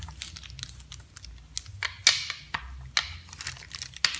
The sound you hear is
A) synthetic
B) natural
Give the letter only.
B